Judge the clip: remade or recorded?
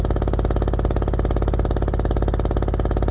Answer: recorded